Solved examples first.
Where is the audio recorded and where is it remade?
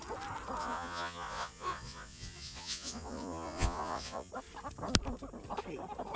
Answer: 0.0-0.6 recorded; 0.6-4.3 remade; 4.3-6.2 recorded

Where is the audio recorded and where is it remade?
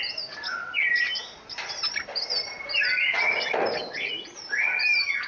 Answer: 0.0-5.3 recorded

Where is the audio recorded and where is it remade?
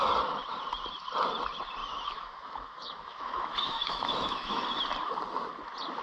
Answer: 0.0-1.8 recorded; 1.8-4.6 remade; 4.6-6.0 recorded